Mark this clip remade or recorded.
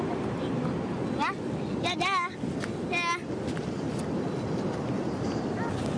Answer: recorded